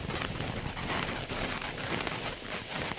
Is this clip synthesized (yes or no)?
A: no